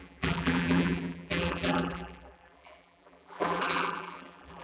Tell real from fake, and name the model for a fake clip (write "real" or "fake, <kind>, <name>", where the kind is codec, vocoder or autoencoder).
fake, vocoder, BigVGAN v2